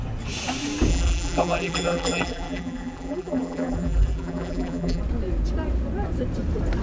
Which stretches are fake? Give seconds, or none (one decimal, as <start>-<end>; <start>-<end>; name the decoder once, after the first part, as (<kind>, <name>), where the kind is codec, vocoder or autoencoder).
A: 0.9-5.0 (vocoder, BigVGAN v2)